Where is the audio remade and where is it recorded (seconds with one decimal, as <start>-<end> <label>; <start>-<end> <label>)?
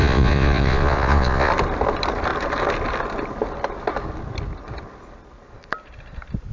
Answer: 0.0-1.5 remade; 1.5-6.5 recorded